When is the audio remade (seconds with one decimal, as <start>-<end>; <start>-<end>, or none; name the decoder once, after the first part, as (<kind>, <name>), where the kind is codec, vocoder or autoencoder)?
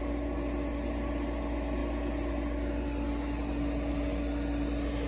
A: none